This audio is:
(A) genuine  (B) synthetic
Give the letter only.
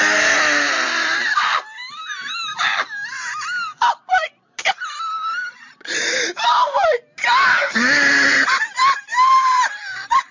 B